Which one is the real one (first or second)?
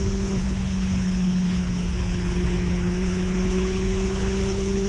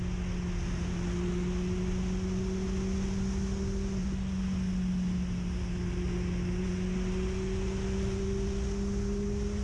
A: second